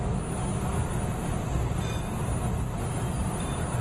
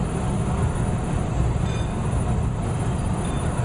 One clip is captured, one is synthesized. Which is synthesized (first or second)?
second